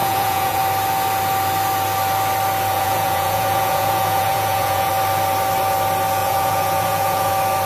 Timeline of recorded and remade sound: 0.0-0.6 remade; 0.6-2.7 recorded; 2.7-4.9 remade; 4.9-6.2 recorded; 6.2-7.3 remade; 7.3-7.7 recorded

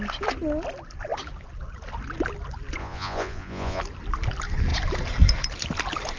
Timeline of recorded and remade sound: 0.0-2.8 recorded; 2.8-3.8 remade; 3.8-6.2 recorded

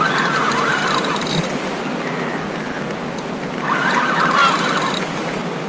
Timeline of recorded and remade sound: 0.0-5.7 recorded

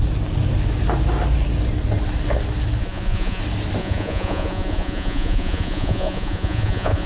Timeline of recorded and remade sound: 0.0-2.8 recorded; 2.8-3.4 remade; 3.4-3.8 recorded; 3.8-7.1 remade